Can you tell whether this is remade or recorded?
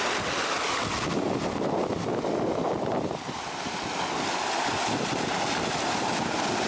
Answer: recorded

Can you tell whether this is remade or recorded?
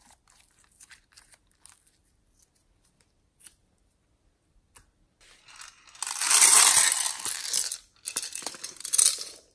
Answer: recorded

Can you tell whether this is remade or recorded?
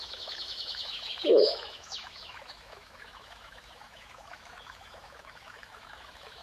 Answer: remade